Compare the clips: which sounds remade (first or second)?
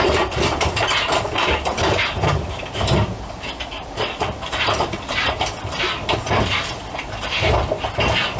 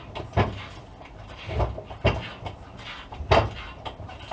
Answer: first